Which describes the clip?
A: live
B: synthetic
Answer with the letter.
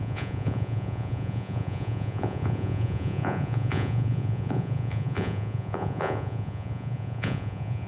B